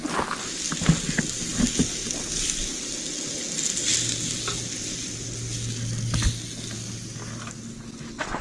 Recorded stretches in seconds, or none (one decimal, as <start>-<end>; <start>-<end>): 0.0-8.4